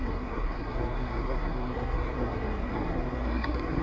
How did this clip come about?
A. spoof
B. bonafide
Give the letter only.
A